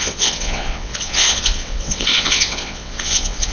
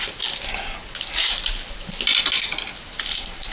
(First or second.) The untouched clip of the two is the second